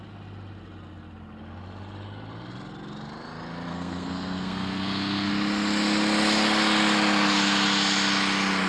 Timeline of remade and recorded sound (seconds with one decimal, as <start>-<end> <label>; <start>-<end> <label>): 0.0-3.7 recorded; 3.7-5.3 remade; 5.3-8.7 recorded